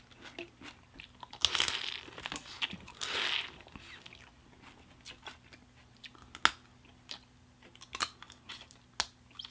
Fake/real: real